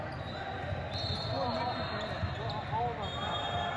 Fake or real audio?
real